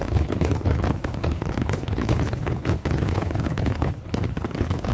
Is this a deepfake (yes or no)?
yes